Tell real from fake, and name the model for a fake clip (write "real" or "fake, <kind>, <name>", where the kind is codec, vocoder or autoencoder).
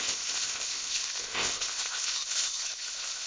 fake, codec, ZipCodec